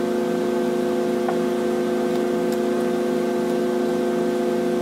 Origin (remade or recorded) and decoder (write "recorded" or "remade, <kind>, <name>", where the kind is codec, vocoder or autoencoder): recorded